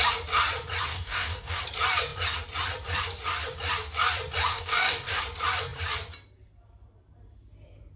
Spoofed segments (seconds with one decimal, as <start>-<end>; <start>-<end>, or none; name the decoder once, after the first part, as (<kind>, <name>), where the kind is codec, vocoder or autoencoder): 0.9-1.6 (codec, DAC); 4.5-5.2